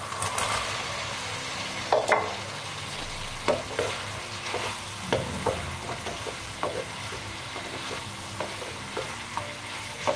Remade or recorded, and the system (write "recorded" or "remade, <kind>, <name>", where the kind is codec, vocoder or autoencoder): recorded